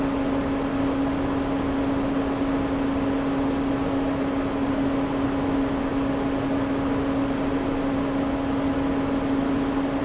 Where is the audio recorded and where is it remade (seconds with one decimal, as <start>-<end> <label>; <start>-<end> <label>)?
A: 0.0-10.0 recorded